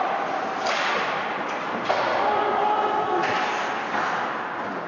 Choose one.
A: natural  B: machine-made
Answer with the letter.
A